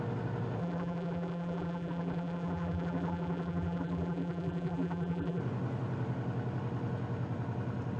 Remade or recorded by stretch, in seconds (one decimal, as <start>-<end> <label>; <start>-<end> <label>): 0.0-0.6 recorded; 0.6-5.4 remade; 5.4-8.0 recorded